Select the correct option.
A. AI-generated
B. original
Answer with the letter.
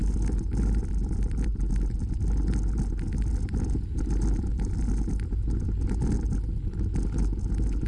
B